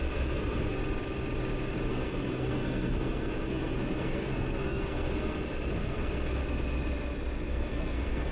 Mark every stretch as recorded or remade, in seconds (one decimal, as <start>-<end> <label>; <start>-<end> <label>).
0.0-0.8 remade; 0.8-1.9 recorded; 1.9-6.4 remade; 6.4-7.4 recorded; 7.4-8.3 remade